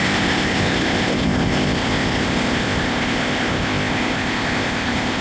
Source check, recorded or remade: remade